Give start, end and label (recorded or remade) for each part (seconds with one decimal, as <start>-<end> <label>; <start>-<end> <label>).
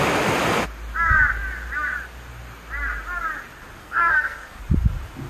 0.0-3.8 recorded; 3.8-4.6 remade; 4.6-5.3 recorded